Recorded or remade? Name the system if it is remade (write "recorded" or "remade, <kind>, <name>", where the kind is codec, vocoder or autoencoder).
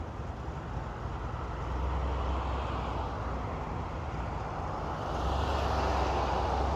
recorded